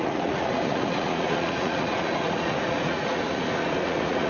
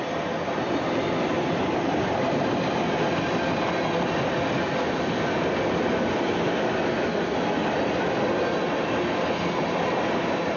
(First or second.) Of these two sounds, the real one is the second